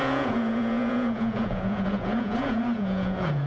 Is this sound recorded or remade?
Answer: remade